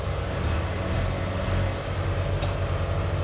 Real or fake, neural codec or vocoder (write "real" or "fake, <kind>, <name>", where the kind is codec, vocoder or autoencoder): real